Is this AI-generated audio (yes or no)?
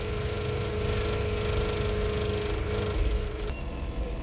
no